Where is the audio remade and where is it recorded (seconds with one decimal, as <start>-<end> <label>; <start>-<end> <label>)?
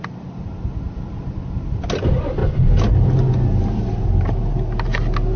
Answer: 0.0-5.4 recorded